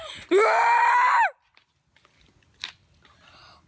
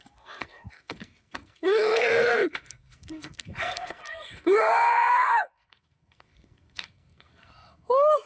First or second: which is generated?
second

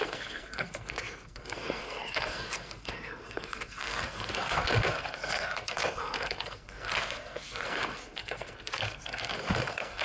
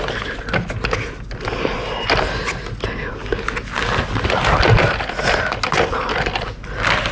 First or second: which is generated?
first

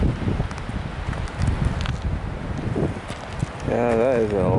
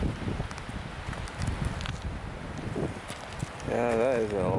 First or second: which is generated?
second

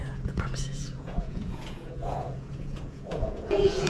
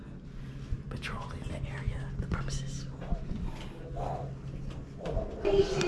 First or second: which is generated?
first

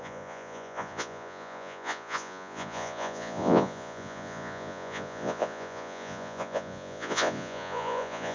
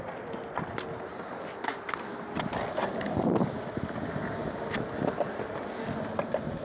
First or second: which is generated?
first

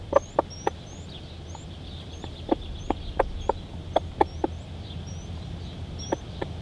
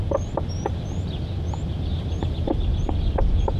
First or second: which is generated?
second